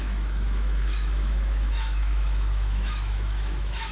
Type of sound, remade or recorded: remade